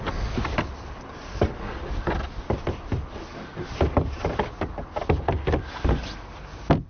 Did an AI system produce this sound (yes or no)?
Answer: no